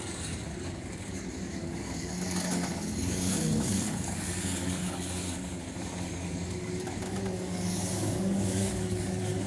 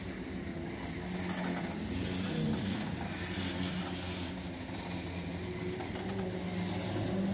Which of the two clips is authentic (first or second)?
second